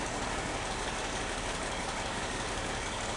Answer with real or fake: fake